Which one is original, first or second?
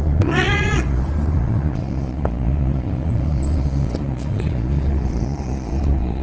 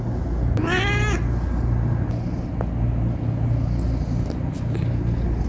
second